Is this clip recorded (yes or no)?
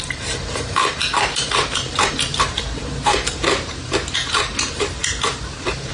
no